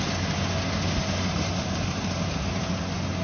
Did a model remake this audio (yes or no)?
no